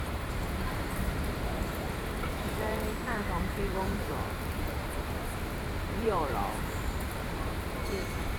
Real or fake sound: fake